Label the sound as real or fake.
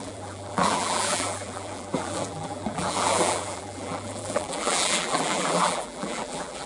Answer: fake